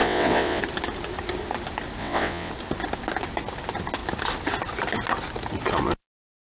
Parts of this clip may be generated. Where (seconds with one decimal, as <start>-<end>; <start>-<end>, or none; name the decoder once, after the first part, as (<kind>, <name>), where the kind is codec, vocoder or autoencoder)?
0.0-0.6 (vocoder, WaveNeXt); 2.0-2.5